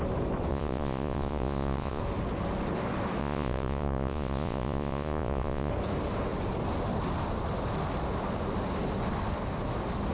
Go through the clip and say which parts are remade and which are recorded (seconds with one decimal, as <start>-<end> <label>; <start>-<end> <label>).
0.0-0.5 recorded; 0.5-2.0 remade; 2.0-3.2 recorded; 3.2-5.7 remade; 5.7-10.1 recorded